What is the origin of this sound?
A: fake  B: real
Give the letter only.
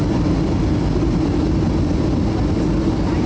B